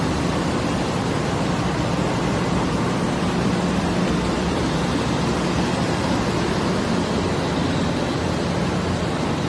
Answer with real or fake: real